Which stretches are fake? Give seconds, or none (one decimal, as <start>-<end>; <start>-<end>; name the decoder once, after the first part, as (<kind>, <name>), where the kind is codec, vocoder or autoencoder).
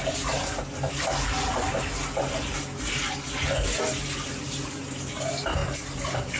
5.6-6.4 (vocoder, BigVGAN v2)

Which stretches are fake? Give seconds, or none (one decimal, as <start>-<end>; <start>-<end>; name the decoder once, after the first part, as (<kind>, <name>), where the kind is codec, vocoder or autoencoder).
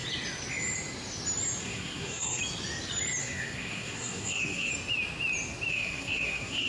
1.6-2.4 (codec, SNAC); 3.2-4.7; 5.7-6.7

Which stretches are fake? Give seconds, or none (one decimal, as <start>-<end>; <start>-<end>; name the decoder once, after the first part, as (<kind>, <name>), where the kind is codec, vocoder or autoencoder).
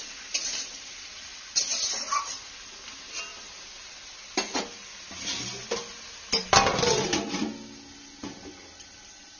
none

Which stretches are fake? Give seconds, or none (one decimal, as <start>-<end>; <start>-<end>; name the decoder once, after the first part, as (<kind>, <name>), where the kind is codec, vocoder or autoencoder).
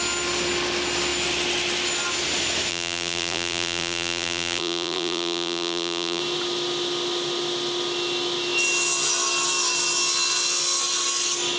2.7-6.2 (vocoder, BigVGAN v2)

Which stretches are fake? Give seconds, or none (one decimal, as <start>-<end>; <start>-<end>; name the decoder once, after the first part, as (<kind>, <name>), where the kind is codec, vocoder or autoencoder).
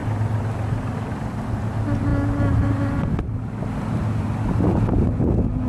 none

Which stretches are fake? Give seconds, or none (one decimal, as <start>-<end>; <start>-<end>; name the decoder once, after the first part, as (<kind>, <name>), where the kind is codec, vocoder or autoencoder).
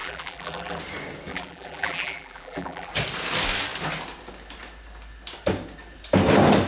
0.0-0.8 (vocoder, BigVGAN v2); 1.3-2.9